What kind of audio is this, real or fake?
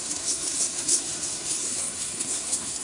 fake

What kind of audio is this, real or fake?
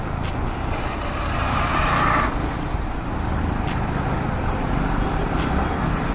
real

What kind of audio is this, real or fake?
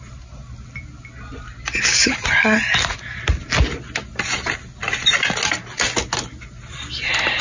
real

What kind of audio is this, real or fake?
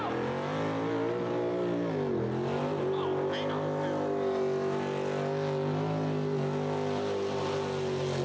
real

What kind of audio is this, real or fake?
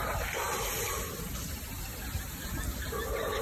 real